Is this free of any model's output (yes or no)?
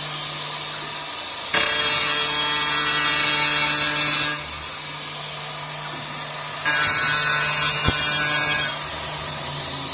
yes